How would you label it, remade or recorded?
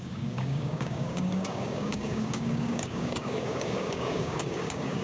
remade